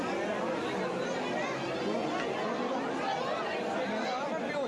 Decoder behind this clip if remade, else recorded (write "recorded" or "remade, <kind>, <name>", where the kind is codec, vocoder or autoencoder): recorded